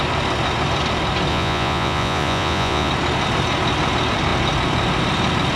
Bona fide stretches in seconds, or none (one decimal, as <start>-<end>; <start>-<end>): 0.0-1.3; 2.9-5.6